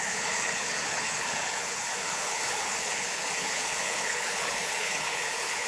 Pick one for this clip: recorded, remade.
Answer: remade